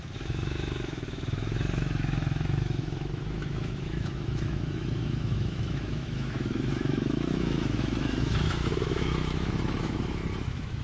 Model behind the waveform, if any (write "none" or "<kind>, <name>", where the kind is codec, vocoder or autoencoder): autoencoder, DAC-VAE